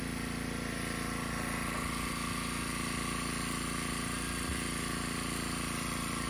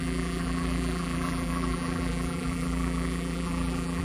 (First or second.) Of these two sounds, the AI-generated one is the second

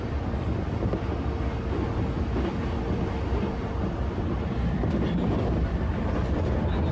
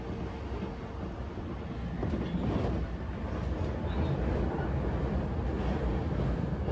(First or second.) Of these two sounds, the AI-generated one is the first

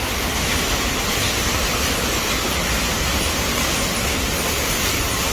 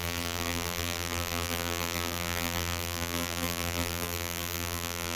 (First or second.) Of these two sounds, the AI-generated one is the second